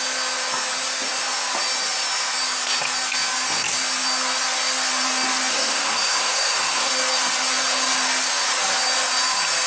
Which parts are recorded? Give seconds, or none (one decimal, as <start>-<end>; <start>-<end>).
0.0-5.5; 6.9-9.7